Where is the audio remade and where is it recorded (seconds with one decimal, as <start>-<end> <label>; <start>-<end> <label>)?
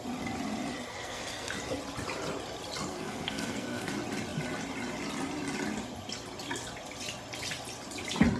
0.0-0.9 recorded; 0.9-1.5 remade; 1.5-2.9 recorded; 2.9-3.9 remade; 3.9-8.4 recorded